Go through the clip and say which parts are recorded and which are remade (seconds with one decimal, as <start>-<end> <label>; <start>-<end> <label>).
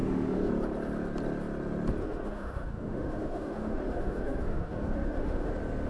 0.0-0.5 remade; 0.5-2.0 recorded; 2.0-5.5 remade; 5.5-5.9 recorded